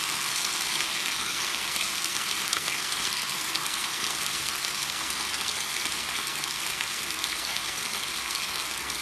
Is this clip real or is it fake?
fake